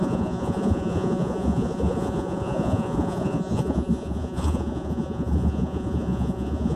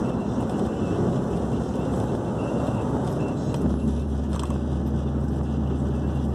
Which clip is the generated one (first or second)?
first